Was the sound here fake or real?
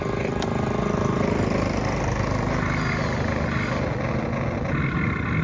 real